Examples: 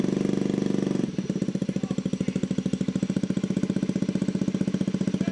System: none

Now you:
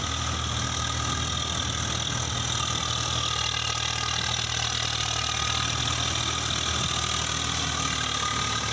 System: none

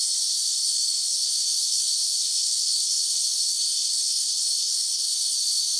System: codec, SNAC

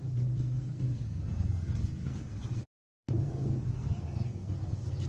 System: codec, SNAC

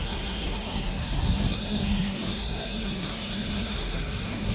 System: codec, SNAC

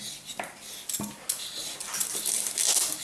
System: none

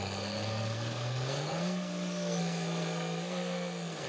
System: codec, SNAC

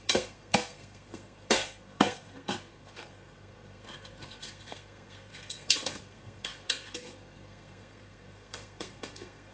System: codec, SNAC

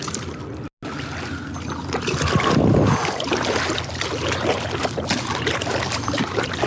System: none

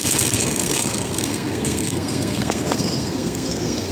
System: codec, SNAC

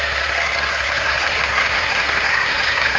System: codec, SNAC